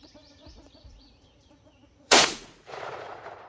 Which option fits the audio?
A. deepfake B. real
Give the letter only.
A